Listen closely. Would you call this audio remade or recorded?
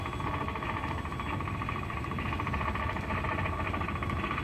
recorded